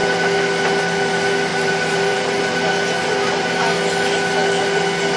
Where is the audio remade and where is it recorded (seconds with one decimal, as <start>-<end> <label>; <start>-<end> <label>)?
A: 0.0-1.5 recorded; 1.5-2.4 remade; 2.4-5.2 recorded

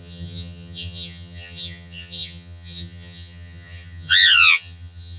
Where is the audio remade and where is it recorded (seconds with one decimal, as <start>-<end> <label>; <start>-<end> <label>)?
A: 0.0-5.2 remade

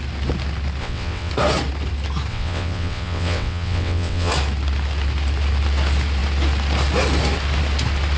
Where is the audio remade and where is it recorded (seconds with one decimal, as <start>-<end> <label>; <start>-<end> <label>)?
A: 0.0-0.8 recorded; 0.8-1.3 remade; 1.3-2.3 recorded; 2.3-4.3 remade; 4.3-8.2 recorded

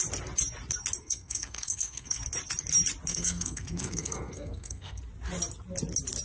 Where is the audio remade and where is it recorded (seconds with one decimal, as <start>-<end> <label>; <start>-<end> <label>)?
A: 0.0-1.0 recorded; 1.0-2.2 remade; 2.2-3.1 recorded; 3.1-5.0 remade; 5.0-6.2 recorded